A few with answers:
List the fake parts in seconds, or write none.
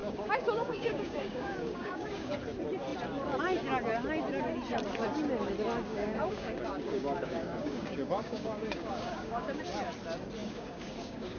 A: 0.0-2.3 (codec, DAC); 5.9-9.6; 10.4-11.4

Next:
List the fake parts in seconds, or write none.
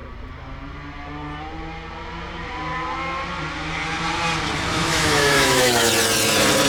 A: 4.7-5.9 (autoencoder, DAC-VAE)